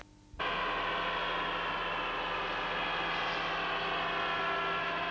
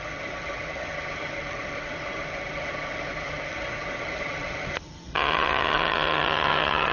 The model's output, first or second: second